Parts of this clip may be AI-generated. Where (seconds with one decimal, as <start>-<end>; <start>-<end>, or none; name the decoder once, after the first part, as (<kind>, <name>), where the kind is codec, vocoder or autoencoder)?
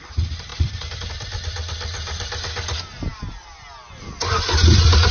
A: 0.5-1.1 (vocoder, BigVGAN v2)